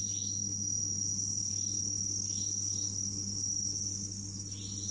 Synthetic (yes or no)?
no